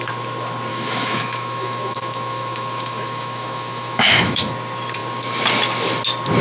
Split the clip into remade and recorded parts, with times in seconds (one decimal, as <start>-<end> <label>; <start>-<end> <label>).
0.0-0.7 recorded; 0.7-4.5 remade; 4.5-6.4 recorded